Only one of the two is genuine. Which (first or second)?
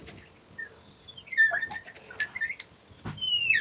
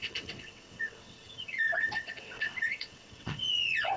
first